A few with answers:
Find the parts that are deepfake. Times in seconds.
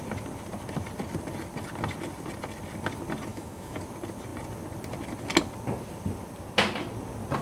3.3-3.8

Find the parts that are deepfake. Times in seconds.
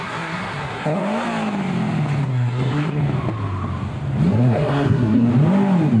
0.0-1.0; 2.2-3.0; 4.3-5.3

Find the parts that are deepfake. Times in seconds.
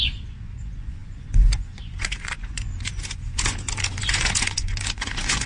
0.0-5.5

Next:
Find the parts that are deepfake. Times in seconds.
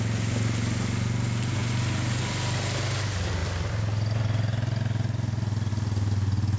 none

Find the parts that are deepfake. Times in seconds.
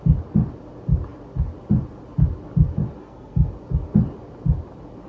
3.0-3.5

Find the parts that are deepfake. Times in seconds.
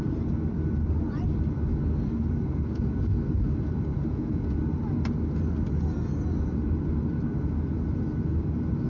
4.1-4.6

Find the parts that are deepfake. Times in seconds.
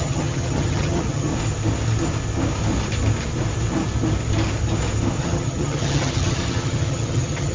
0.0-1.3; 5.2-7.5